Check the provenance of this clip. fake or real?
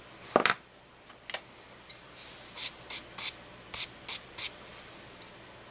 real